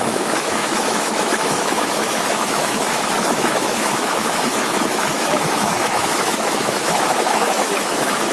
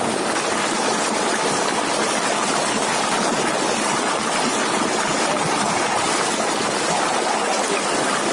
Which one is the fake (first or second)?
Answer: first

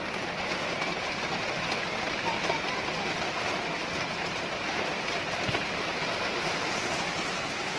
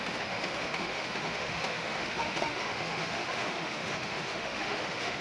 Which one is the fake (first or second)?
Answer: second